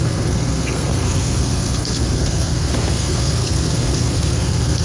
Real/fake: fake